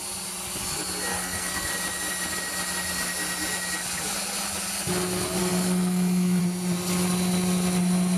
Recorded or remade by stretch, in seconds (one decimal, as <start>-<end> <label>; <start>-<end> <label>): 0.0-1.1 recorded; 1.1-1.7 remade; 1.7-5.4 recorded; 5.4-6.4 remade; 6.4-8.2 recorded